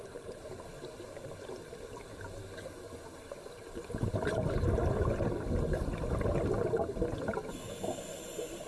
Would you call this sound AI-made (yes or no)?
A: no